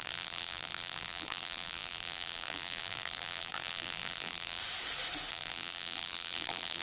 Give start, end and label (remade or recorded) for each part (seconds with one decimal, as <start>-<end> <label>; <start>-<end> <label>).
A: 0.0-4.6 remade; 4.6-5.3 recorded; 5.3-6.8 remade